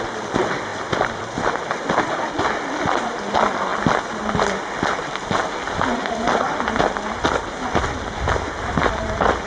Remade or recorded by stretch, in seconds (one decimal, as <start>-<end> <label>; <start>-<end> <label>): 0.0-0.7 recorded; 0.7-2.3 remade; 2.3-9.5 recorded